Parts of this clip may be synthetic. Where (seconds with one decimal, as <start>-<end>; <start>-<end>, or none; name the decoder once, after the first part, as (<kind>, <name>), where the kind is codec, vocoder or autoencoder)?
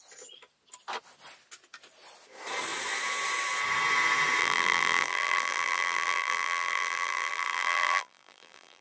4.4-8.8 (vocoder, BigVGAN v2)